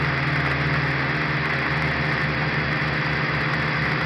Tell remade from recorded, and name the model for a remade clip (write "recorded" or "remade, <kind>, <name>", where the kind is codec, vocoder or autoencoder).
recorded